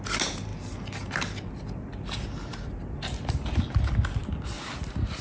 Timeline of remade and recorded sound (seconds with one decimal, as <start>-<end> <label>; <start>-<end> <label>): 0.0-5.2 recorded